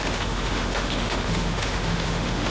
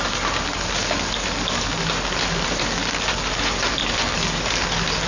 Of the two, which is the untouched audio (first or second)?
second